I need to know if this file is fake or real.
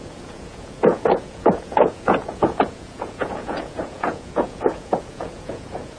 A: fake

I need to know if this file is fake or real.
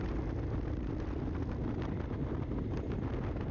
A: real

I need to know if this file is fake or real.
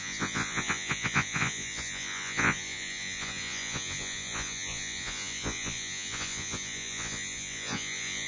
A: fake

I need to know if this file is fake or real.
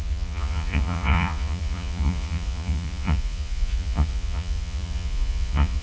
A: fake